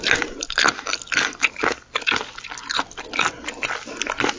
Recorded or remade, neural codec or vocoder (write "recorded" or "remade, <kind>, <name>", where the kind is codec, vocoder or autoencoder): recorded